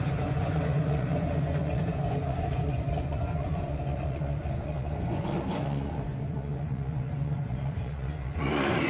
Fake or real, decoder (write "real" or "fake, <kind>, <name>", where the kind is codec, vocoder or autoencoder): fake, vocoder, Vocos